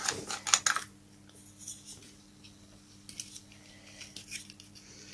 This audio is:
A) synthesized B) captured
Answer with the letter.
B